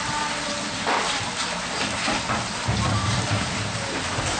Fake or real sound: real